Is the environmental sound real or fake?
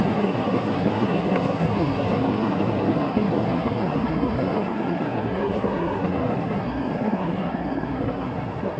fake